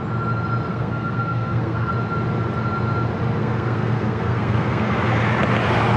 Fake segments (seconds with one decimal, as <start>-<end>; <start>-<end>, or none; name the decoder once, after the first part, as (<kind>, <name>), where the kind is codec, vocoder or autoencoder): 0.7-1.9 (codec, SNAC); 3.4-4.9